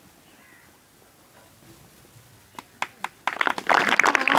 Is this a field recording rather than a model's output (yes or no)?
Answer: yes